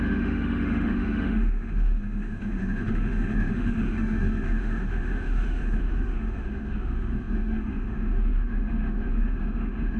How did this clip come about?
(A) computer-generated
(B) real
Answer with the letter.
A